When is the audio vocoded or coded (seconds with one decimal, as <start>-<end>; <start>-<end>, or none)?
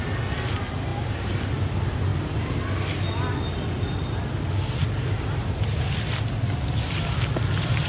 2.1-5.8